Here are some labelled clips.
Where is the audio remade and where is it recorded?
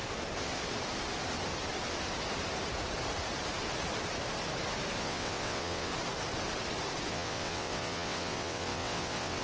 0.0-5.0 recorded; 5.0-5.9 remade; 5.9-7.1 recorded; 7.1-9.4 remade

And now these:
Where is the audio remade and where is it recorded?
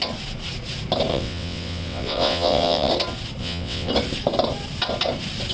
0.0-1.1 recorded; 1.1-2.9 remade; 2.9-3.4 recorded; 3.4-3.9 remade; 3.9-5.5 recorded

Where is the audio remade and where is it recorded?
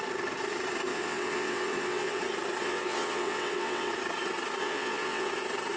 0.0-0.9 recorded; 0.9-2.2 remade; 2.2-2.6 recorded; 2.6-3.9 remade; 3.9-4.6 recorded; 4.6-5.3 remade; 5.3-5.8 recorded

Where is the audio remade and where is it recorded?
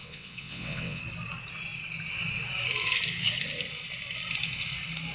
0.0-1.0 remade; 1.0-5.1 recorded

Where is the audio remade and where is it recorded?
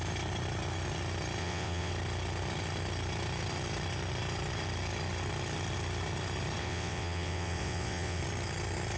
0.0-1.4 recorded; 1.4-1.9 remade; 1.9-6.6 recorded; 6.6-8.2 remade; 8.2-9.0 recorded